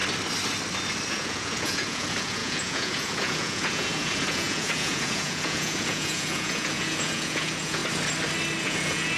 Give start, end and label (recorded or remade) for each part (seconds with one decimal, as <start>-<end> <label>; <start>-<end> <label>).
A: 0.0-1.1 recorded; 1.1-7.8 remade; 7.8-8.6 recorded; 8.6-9.2 remade